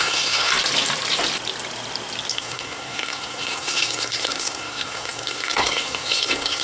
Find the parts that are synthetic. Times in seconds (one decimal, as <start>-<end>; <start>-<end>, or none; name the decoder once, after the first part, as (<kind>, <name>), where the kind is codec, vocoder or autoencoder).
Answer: 0.0-0.5 (codec, SNAC); 2.3-6.6